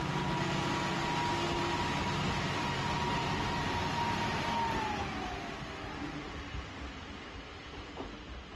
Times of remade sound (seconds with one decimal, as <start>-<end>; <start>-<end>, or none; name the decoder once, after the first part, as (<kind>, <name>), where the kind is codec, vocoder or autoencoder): none

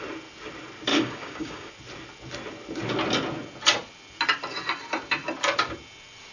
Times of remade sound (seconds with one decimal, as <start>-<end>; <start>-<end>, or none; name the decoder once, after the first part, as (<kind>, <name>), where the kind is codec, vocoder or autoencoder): 0.9-1.7 (codec, DAC)

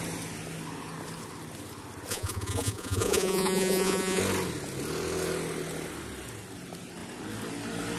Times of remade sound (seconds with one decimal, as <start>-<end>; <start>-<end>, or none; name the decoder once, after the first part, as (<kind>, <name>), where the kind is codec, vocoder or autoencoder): 2.1-4.2 (vocoder, Vocos)

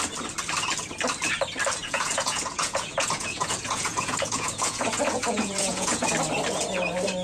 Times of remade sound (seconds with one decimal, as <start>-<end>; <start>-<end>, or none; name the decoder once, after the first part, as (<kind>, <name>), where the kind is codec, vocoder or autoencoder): 1.8-6.1 (vocoder, Vocos)

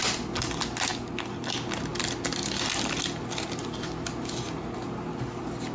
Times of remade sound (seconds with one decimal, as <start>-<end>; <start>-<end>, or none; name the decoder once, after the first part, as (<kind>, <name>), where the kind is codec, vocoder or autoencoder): none

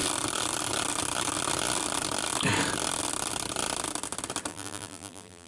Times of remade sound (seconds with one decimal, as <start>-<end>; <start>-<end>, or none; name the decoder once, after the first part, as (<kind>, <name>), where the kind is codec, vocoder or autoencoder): 4.5-5.5 (vocoder, BigVGAN v2)